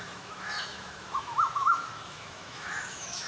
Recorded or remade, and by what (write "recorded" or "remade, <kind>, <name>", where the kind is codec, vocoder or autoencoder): remade, autoencoder, DAC-VAE